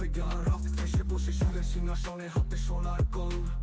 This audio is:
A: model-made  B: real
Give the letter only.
B